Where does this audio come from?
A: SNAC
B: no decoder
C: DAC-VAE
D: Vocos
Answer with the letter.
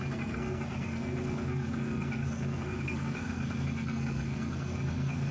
A